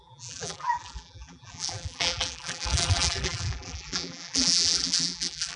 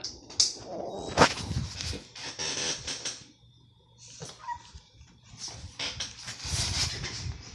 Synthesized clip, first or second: first